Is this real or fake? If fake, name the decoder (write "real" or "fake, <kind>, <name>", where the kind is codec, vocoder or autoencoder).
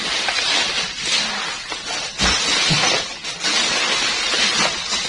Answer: real